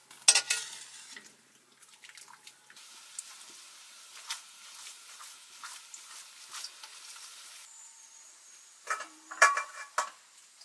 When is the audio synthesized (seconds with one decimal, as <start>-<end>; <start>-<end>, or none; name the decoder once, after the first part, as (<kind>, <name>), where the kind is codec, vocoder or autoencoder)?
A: 6.9-9.8 (vocoder, BigVGAN v2)